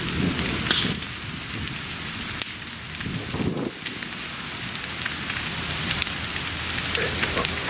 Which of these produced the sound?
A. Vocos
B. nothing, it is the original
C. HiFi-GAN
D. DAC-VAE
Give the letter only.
B